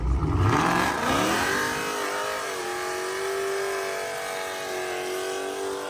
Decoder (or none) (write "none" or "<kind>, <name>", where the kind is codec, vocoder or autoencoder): none